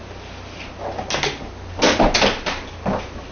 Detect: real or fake real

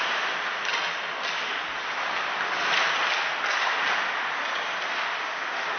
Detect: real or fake real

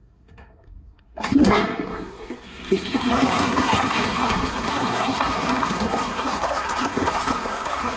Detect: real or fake fake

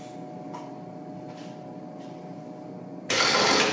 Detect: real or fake real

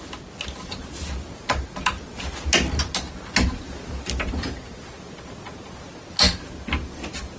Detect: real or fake real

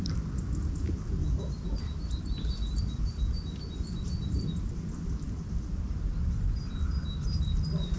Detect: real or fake real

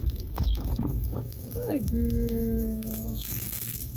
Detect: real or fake fake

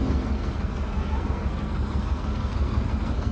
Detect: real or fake fake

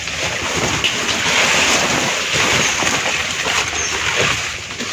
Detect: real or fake real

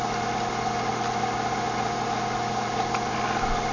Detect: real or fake real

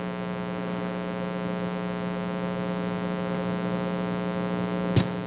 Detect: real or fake real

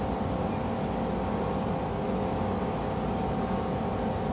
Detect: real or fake real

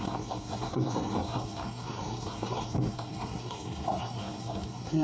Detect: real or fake fake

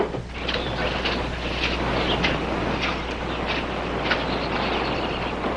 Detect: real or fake real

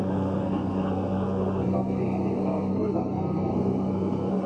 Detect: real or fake fake